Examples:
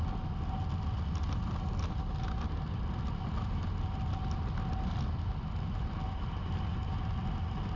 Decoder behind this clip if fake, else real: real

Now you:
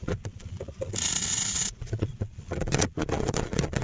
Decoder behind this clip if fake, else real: fake, vocoder, Vocos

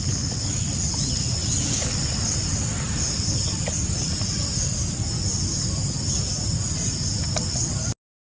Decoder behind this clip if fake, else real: real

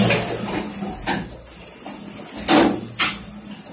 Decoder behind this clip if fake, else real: real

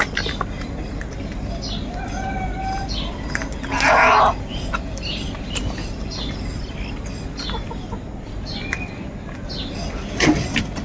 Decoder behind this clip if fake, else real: real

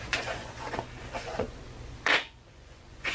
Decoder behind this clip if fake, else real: fake, vocoder, Vocos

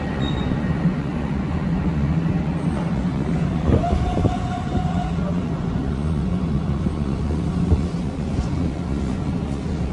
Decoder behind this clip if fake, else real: fake, vocoder, Vocos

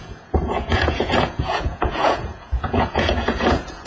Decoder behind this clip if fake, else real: fake, vocoder, Vocos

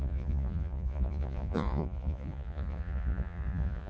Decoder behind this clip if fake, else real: fake, vocoder, Vocos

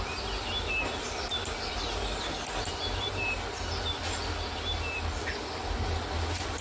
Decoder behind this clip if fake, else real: real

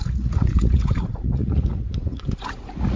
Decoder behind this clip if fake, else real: fake, vocoder, Vocos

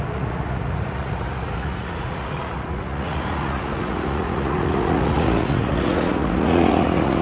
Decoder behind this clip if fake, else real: fake, vocoder, Vocos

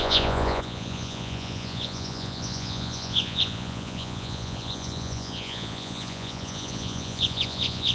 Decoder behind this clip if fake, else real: fake, vocoder, Vocos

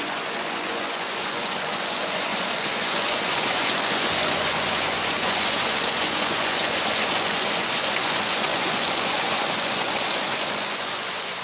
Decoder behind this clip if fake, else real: fake, vocoder, Vocos